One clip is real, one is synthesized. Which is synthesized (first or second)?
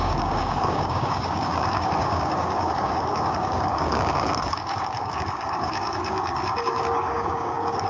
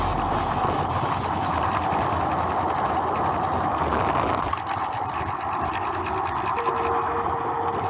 first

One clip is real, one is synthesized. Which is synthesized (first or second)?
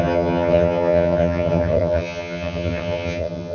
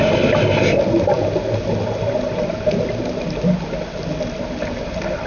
first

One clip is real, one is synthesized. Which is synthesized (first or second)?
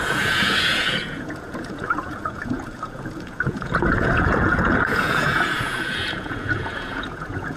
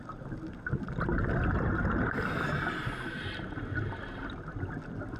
first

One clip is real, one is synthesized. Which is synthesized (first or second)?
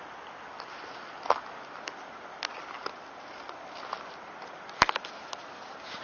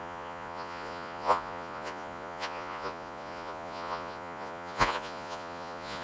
second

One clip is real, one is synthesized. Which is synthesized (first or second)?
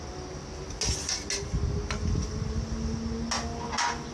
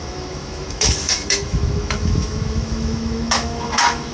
second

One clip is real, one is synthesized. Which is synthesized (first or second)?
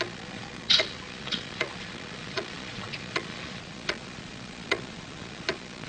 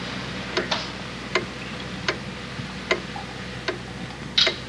first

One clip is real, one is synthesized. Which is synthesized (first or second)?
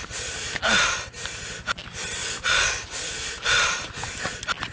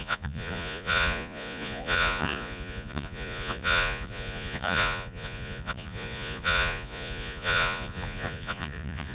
second